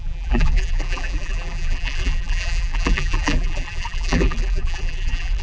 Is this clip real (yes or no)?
no